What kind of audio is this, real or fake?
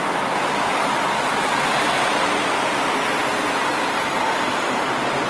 real